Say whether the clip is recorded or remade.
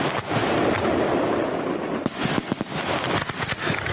recorded